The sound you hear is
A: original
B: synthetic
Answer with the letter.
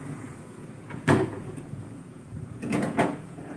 B